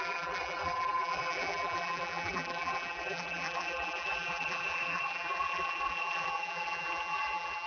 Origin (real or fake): fake